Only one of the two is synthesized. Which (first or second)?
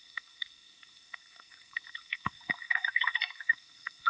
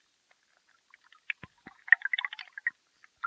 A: first